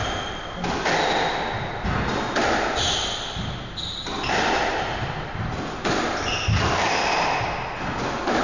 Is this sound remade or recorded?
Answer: recorded